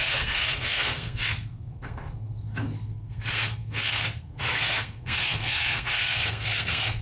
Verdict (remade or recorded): remade